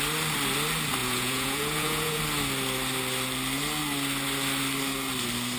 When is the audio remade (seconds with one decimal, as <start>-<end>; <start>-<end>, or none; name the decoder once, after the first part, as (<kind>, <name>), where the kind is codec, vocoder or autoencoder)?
1.0-2.2 (vocoder, Vocos)